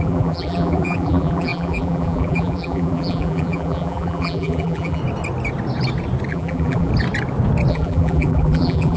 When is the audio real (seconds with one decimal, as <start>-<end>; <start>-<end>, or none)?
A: 5.0-6.3; 6.9-7.7